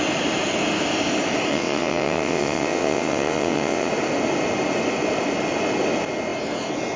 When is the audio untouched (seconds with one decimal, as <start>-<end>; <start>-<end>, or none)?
0.0-1.5; 3.9-7.0